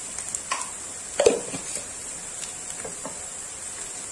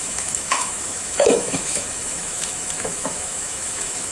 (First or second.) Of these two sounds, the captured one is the first